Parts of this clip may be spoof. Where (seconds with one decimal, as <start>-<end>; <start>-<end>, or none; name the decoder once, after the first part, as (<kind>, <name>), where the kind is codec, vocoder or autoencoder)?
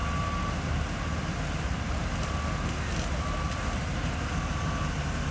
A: none